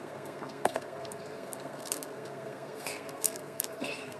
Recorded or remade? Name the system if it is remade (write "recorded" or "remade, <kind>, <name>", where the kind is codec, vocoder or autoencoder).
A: remade, codec, SNAC